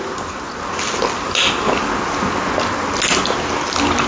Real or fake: real